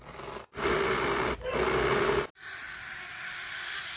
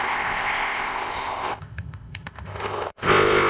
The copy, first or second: second